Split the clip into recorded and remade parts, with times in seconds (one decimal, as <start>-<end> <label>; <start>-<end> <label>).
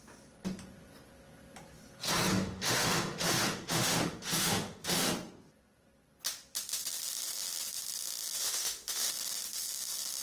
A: 0.0-2.3 recorded; 2.3-5.1 remade; 5.1-8.4 recorded; 8.4-9.1 remade; 9.1-10.2 recorded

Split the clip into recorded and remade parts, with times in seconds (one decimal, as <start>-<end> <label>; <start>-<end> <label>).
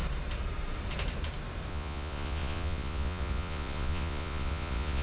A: 0.0-1.7 recorded; 1.7-5.0 remade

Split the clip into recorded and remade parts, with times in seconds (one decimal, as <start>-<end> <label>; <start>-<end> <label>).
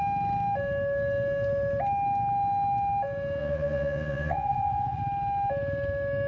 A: 0.0-3.4 recorded; 3.4-5.0 remade; 5.0-6.3 recorded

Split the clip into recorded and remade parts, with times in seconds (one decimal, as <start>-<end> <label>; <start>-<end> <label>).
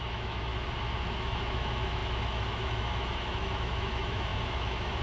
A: 0.0-0.5 remade; 0.5-1.0 recorded; 1.0-5.0 remade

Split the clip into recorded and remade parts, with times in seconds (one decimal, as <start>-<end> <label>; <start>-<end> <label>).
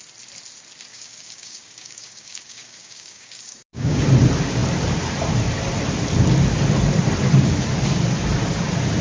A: 0.0-0.9 recorded; 0.9-4.0 remade; 4.0-9.0 recorded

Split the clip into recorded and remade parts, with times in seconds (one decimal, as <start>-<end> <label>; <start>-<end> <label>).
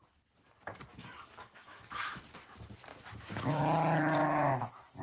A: 0.0-0.9 recorded; 0.9-2.2 remade; 2.2-2.9 recorded; 2.9-3.6 remade; 3.6-4.2 recorded; 4.2-5.0 remade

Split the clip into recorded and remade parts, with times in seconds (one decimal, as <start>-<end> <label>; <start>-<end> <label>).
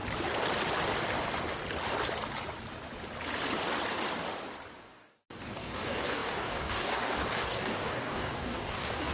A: 0.0-4.8 recorded; 4.8-9.1 remade